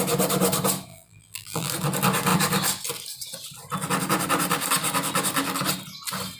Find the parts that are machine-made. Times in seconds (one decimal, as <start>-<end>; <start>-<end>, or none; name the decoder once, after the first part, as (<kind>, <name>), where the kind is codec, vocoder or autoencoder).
0.9-1.7 (vocoder, BigVGAN v2)